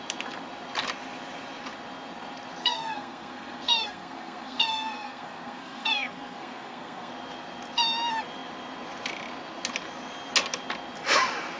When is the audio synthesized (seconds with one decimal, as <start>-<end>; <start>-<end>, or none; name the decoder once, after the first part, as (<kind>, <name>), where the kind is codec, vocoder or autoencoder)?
2.6-7.1 (codec, SNAC)